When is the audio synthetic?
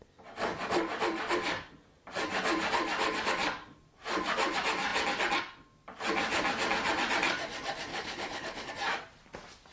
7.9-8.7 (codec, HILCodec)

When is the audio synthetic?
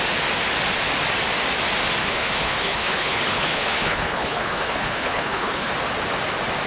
2.0-5.7 (codec, HILCodec)